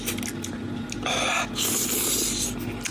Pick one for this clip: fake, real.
real